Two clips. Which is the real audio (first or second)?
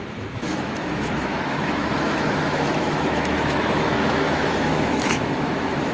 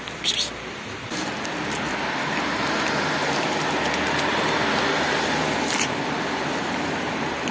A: second